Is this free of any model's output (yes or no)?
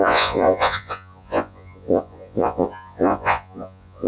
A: no